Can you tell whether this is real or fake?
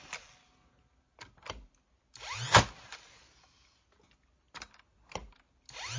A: real